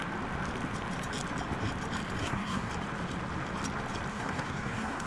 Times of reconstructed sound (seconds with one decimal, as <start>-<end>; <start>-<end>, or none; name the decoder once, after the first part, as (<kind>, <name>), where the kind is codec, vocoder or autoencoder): 2.2-2.7 (codec, SNAC); 4.1-5.1